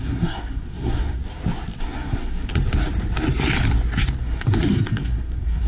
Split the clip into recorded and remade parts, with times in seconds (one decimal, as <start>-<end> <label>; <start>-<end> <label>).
0.0-1.2 remade; 1.2-1.8 recorded; 1.8-2.5 remade; 2.5-4.2 recorded; 4.2-5.7 remade